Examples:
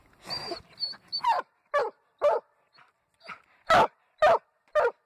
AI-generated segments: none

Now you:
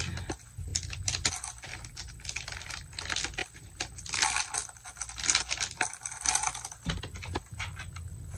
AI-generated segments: none

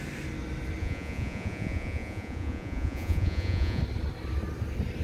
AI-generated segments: 0.8-3.8 (vocoder, Vocos)

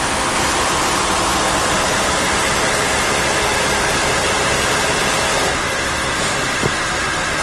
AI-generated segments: 4.2-5.2 (vocoder, BigVGAN v2)

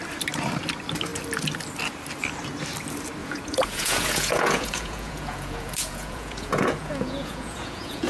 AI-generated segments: 3.2-8.1 (vocoder, Vocos)